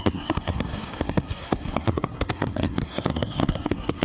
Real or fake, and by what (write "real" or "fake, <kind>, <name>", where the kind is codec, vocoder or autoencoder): fake, codec, SNAC